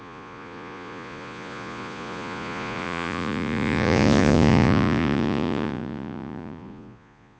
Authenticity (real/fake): fake